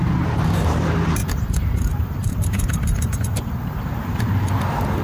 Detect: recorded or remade remade